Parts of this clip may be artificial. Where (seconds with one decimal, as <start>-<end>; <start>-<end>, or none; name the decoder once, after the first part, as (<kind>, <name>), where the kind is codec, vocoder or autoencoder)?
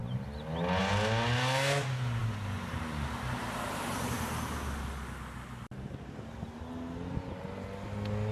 none